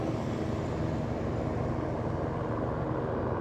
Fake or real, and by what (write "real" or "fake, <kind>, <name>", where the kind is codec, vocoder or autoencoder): real